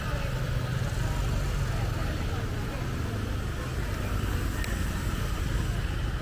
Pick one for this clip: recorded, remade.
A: recorded